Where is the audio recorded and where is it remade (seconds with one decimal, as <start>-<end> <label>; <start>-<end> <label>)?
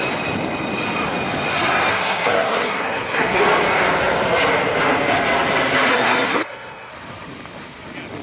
0.0-1.9 recorded; 1.9-3.4 remade; 3.4-5.9 recorded; 5.9-6.9 remade; 6.9-8.2 recorded